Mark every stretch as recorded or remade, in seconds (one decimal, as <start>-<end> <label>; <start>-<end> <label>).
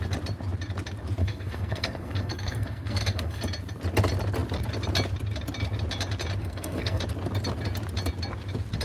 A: 0.0-1.2 recorded; 1.2-3.4 remade; 3.4-6.4 recorded; 6.4-7.0 remade; 7.0-8.8 recorded